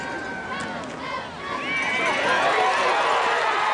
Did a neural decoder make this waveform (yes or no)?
no